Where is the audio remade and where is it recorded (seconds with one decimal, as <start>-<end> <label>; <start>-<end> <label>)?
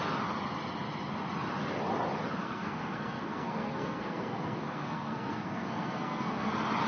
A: 0.0-2.4 recorded; 2.4-6.5 remade; 6.5-6.9 recorded